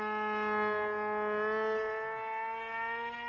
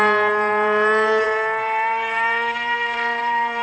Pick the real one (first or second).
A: first